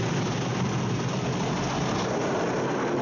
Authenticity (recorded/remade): recorded